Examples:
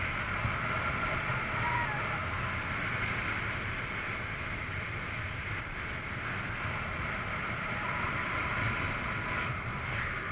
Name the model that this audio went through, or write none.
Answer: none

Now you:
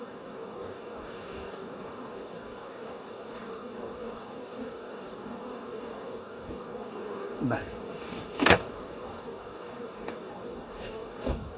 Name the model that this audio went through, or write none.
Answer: codec, DAC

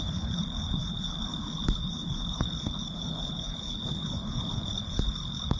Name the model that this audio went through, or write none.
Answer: codec, HILCodec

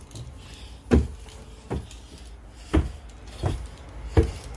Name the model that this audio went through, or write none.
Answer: none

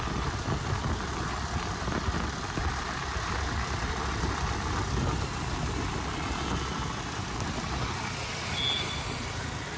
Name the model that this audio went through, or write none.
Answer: none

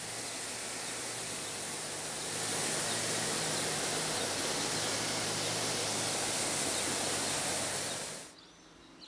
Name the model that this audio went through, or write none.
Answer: none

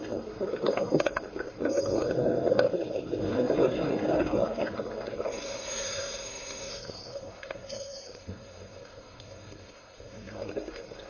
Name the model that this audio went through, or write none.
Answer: codec, SNAC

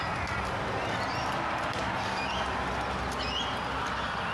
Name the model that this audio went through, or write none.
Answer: none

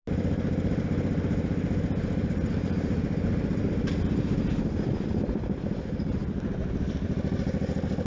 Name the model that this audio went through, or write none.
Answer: none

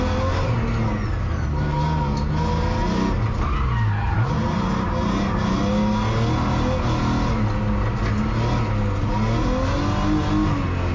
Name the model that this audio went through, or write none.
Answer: none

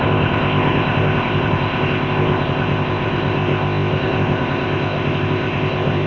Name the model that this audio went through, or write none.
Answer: codec, ZipCodec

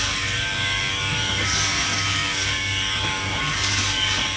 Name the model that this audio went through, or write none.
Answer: codec, DAC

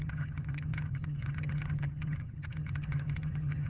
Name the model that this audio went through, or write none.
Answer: vocoder, HiFi-GAN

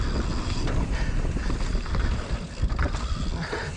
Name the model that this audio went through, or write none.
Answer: none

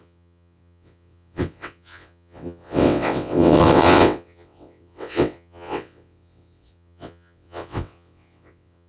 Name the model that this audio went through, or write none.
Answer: vocoder, WaveNeXt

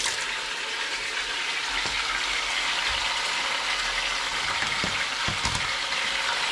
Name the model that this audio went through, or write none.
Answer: none